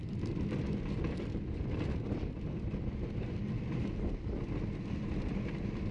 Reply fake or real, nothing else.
real